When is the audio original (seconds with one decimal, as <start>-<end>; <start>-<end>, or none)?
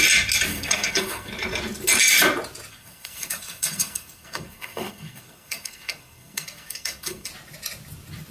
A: 0.0-0.5; 1.3-2.7; 7.3-8.3